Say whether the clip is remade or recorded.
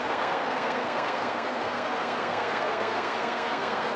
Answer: remade